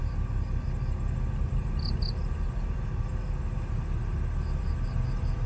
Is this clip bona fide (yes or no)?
yes